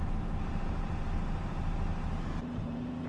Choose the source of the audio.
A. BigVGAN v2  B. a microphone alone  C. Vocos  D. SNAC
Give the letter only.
A